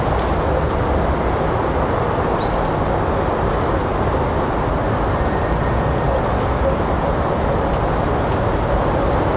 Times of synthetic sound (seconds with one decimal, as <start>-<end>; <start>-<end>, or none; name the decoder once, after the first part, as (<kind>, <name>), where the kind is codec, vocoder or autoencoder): none